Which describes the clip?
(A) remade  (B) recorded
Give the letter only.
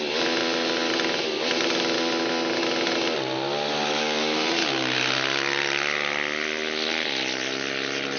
B